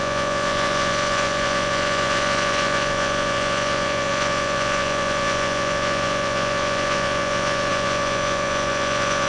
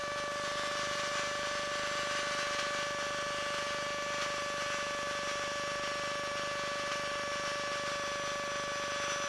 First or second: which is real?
second